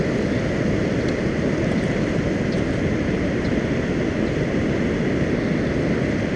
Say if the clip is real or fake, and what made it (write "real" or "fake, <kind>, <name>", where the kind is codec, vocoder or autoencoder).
real